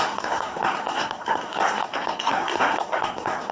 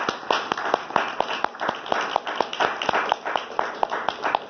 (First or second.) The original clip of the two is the second